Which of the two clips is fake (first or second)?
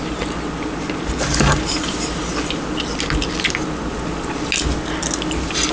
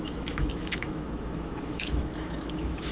second